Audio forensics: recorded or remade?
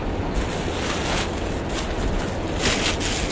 recorded